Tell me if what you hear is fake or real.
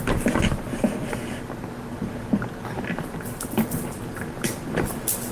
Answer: real